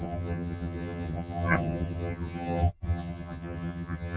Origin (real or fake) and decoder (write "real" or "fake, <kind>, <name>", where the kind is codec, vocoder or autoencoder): fake, vocoder, HiFi-GAN